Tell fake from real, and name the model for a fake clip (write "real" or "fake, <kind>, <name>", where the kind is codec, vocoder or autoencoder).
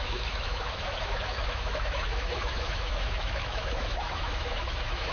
fake, autoencoder, DAC-VAE